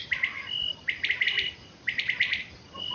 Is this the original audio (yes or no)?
yes